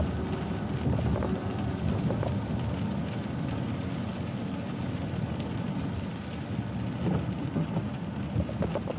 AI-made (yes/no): no